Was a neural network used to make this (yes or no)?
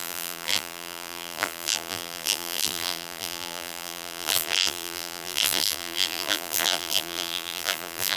yes